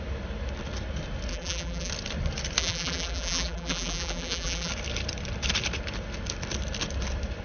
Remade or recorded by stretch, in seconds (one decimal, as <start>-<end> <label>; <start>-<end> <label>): 0.0-1.3 recorded; 1.3-1.9 remade; 1.9-2.6 recorded; 2.6-4.7 remade; 4.7-7.4 recorded